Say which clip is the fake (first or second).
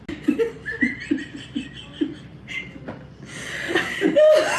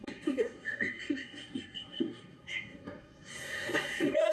second